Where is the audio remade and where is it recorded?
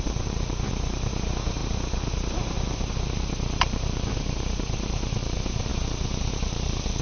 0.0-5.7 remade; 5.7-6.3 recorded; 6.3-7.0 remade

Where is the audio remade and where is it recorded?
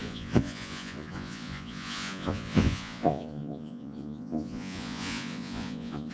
0.0-6.1 remade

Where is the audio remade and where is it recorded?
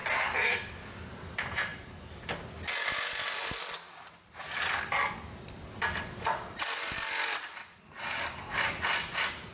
0.0-9.5 recorded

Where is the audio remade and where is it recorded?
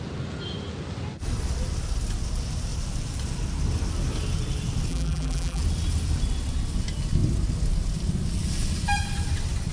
0.0-4.9 recorded; 4.9-5.6 remade; 5.6-9.7 recorded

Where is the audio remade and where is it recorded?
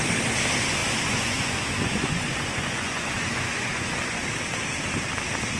0.0-0.8 recorded; 0.8-4.2 remade; 4.2-5.6 recorded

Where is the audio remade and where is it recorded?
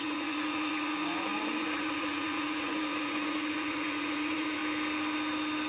0.0-4.6 remade; 4.6-5.7 recorded